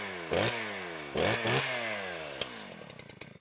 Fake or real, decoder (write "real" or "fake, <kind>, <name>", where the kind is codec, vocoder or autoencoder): real